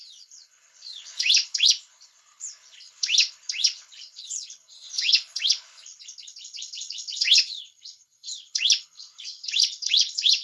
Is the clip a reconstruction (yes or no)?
yes